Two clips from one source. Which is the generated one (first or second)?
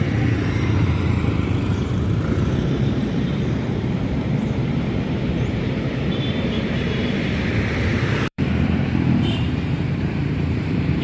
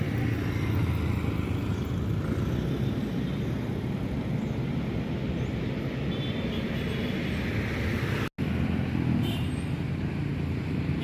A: first